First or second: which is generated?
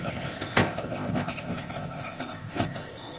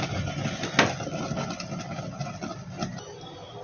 first